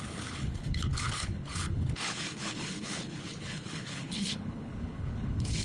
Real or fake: fake